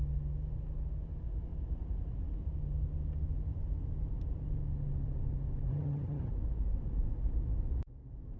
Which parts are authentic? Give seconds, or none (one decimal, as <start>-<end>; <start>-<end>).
0.0-5.7; 6.3-8.4